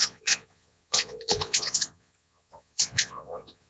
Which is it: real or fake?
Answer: fake